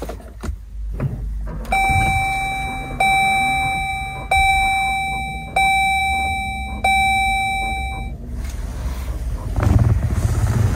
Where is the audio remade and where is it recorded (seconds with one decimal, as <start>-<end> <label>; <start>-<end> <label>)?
0.0-10.7 recorded